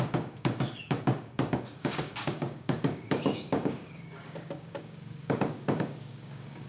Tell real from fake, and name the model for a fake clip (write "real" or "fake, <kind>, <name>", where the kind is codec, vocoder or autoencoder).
fake, codec, DAC